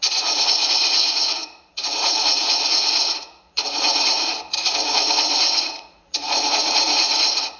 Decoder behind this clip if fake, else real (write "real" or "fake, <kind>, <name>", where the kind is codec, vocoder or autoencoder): fake, vocoder, Vocos